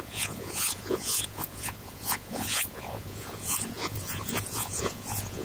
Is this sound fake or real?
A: fake